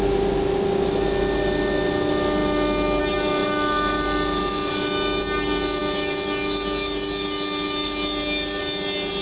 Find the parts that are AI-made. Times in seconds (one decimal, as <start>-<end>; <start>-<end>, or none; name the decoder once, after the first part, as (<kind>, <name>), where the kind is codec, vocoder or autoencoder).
none

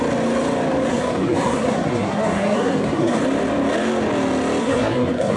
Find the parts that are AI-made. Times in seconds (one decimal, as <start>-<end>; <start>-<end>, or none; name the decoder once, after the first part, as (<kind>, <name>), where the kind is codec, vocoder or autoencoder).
0.9-3.2 (codec, SNAC); 4.6-5.4

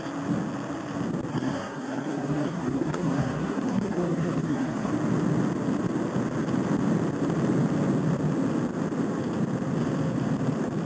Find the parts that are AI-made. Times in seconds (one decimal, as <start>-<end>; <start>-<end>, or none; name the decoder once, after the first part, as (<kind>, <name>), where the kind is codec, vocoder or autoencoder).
1.3-4.9 (codec, SNAC)

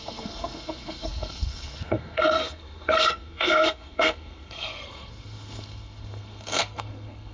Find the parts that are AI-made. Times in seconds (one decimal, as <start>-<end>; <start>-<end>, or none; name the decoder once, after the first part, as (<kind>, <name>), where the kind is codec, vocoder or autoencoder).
0.0-7.3 (codec, SNAC)

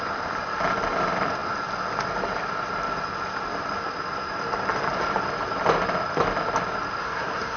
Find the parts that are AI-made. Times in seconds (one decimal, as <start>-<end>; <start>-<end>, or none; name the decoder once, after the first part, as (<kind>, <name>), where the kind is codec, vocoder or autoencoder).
7.0-7.6 (codec, SNAC)

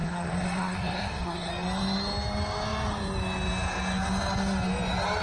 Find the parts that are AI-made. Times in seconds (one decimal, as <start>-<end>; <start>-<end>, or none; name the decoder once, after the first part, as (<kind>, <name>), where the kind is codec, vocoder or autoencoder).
0.0-1.5 (codec, SNAC)

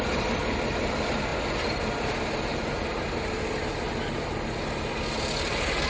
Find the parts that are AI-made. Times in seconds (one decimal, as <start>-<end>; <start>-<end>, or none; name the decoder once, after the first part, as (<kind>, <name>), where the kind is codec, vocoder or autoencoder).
none